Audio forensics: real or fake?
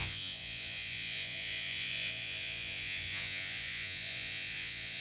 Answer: fake